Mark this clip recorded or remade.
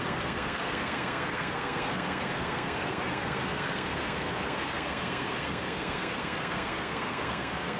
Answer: remade